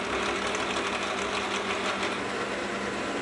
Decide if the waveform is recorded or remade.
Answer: recorded